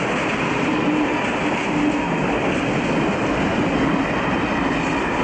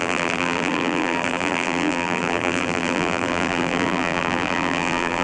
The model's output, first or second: second